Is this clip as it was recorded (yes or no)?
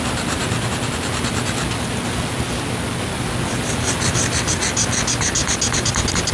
yes